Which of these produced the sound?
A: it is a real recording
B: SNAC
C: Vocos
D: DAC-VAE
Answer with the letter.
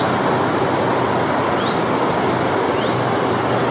A